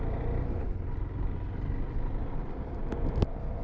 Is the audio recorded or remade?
recorded